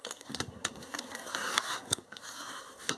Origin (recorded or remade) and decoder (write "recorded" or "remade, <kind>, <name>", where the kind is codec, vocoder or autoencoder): remade, codec, SNAC